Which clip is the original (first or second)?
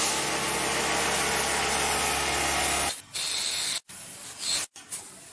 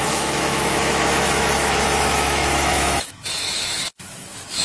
first